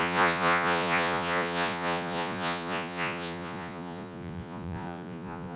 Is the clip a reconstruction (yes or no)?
yes